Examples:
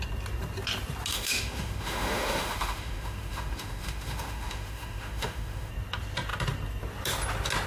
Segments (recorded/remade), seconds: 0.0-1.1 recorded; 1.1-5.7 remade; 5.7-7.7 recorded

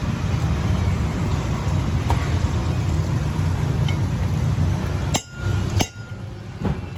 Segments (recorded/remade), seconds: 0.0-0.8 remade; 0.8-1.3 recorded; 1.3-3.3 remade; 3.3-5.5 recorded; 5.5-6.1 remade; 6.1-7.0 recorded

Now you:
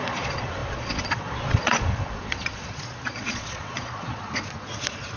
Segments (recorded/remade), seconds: 0.0-5.2 remade